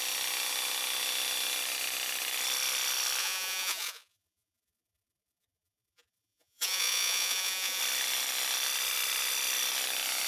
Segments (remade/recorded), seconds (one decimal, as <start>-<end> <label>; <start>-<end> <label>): 0.0-3.2 recorded; 3.2-7.8 remade; 7.8-10.3 recorded